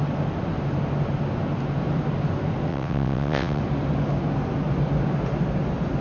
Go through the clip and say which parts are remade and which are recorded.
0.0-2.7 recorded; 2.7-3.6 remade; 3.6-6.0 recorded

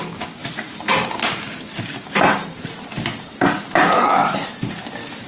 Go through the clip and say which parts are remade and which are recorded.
0.0-0.4 remade; 0.4-1.1 recorded; 1.1-1.7 remade; 1.7-5.3 recorded

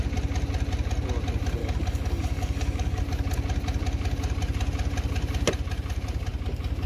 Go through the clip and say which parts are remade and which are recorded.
0.0-1.6 recorded; 1.6-3.0 remade; 3.0-6.9 recorded

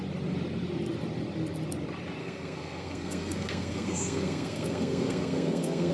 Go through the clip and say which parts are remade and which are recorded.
0.0-2.2 recorded; 2.2-5.9 remade

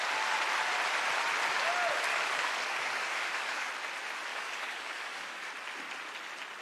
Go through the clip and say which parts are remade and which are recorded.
0.0-2.1 recorded; 2.1-3.7 remade; 3.7-4.3 recorded; 4.3-5.5 remade; 5.5-6.6 recorded